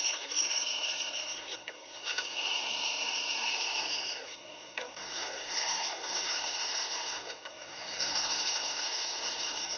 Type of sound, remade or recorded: remade